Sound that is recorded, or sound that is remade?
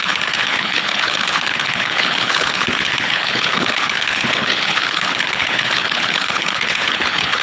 remade